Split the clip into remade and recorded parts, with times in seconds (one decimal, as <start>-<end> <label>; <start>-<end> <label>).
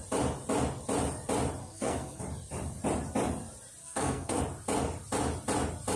0.0-1.6 recorded; 1.6-2.2 remade; 2.2-3.8 recorded; 3.8-4.4 remade; 4.4-6.0 recorded